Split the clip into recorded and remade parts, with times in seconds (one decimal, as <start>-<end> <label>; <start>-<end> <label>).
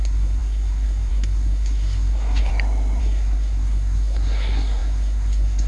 0.0-2.5 remade; 2.5-3.0 recorded; 3.0-5.7 remade